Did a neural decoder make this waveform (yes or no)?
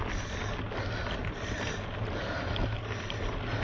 no